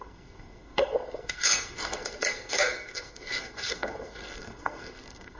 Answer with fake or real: fake